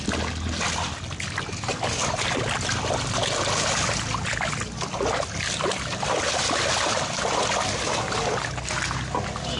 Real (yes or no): yes